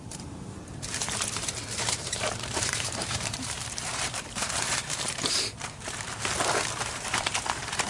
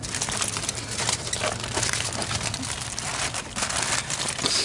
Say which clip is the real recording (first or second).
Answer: second